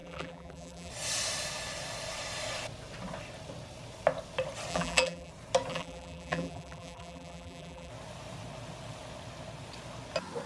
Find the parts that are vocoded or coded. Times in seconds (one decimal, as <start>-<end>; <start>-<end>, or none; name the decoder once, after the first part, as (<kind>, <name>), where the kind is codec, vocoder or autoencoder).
0.0-0.9 (vocoder, BigVGAN v2); 4.7-5.3; 5.7-7.9